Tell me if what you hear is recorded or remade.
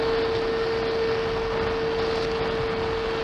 recorded